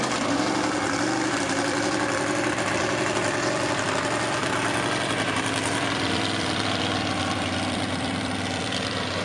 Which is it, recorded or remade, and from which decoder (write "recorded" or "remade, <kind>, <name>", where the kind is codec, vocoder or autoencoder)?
remade, vocoder, BigVGAN v2